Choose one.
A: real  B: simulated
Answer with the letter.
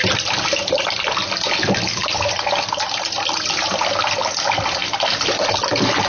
A